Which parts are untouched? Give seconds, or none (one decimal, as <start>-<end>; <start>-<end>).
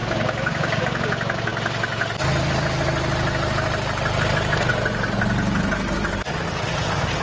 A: 0.8-7.2